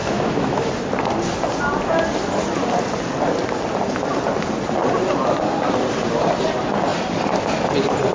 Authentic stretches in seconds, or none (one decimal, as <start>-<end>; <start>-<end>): 0.7-8.1